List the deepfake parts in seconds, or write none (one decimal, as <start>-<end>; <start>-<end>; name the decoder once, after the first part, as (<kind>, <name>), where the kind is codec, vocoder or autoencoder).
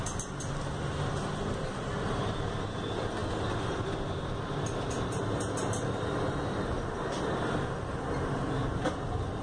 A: none